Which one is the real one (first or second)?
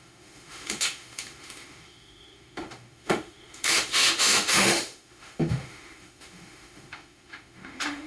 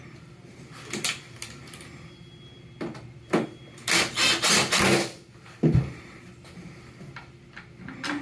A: second